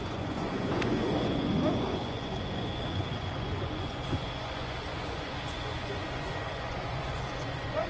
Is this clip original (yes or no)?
no